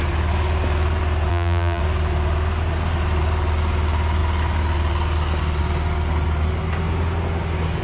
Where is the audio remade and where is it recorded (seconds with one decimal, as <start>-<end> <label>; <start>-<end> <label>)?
0.0-1.3 recorded; 1.3-1.8 remade; 1.8-7.8 recorded